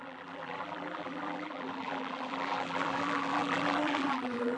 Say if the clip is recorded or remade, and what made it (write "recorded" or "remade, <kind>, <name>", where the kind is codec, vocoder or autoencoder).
remade, vocoder, BigVGAN v2